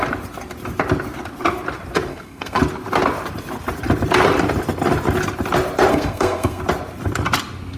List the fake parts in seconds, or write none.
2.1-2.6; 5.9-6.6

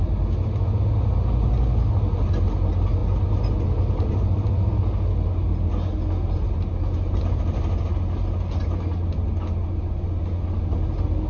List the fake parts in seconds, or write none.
none